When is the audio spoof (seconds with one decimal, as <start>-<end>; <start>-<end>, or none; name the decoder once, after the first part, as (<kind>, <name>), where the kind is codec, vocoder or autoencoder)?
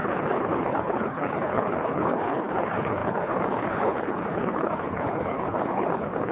0.0-6.3 (codec, HILCodec)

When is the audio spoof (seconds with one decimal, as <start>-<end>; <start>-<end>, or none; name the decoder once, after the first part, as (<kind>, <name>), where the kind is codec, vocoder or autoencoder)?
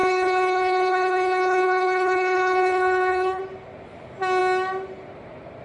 0.0-3.4 (codec, HILCodec)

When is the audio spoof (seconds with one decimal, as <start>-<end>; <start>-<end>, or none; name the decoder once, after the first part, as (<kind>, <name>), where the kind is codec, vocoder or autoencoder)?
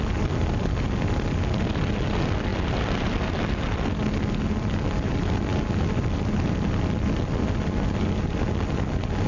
none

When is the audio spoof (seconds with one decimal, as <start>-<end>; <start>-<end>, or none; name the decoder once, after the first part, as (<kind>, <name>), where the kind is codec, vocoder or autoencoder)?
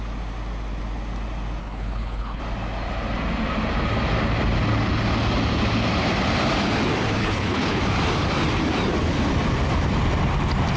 1.6-2.4 (codec, HILCodec); 7.2-7.8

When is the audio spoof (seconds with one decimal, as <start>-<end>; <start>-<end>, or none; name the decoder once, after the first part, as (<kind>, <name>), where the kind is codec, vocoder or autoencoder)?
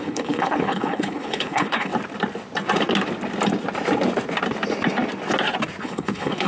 0.0-1.9 (codec, HILCodec); 5.8-6.5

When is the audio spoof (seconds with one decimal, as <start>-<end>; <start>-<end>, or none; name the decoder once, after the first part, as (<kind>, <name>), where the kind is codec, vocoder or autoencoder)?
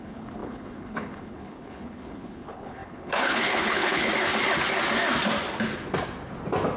0.0-4.1 (codec, HILCodec)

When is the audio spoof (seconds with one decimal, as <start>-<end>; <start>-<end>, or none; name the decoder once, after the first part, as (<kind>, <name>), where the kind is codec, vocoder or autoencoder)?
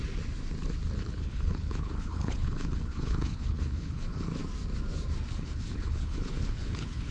1.0-4.4 (codec, HILCodec); 5.3-7.1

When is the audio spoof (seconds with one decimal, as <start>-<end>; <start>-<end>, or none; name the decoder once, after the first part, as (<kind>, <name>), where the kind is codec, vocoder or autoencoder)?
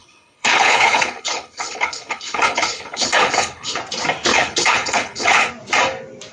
0.0-3.8 (codec, HILCodec); 4.3-5.5